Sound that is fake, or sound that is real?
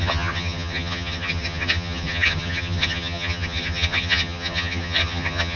fake